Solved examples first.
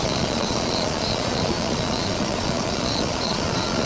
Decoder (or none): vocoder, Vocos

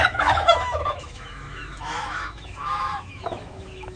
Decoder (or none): autoencoder, DAC-VAE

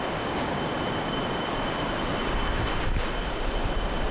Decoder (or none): none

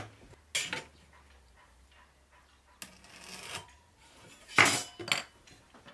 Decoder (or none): none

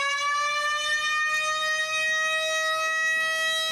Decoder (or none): none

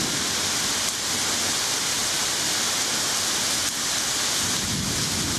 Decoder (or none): none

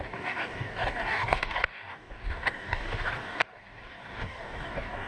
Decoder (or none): codec, DAC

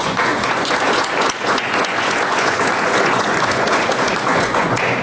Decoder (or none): vocoder, Vocos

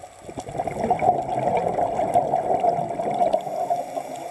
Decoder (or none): none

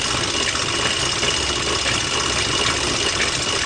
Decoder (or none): none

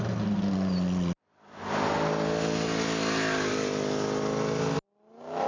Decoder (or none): none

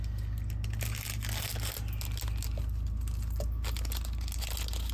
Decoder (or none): none